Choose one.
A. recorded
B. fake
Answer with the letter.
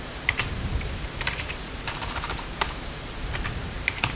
B